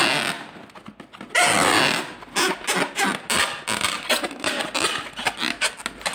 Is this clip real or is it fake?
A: real